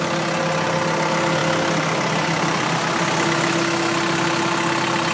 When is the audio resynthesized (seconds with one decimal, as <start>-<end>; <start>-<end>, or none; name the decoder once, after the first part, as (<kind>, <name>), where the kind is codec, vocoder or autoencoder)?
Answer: none